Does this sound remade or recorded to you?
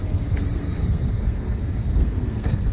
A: remade